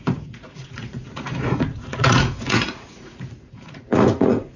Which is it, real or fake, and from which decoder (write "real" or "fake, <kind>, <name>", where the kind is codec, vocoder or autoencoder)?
fake, vocoder, Vocos